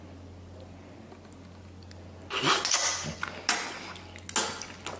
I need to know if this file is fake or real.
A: real